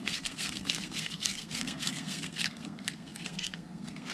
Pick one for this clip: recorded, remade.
remade